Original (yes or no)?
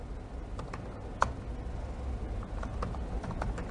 yes